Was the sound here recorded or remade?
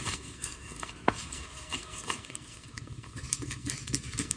remade